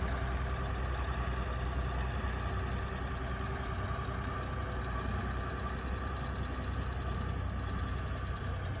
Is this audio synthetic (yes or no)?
no